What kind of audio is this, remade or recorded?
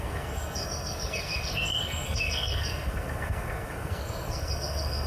remade